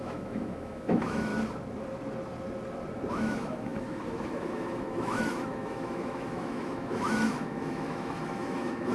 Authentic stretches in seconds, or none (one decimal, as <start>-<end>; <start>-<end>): 1.3-3.1